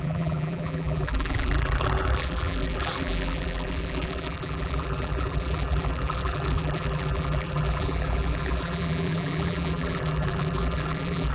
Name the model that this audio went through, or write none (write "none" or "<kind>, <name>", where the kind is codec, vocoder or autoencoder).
vocoder, BigVGAN v2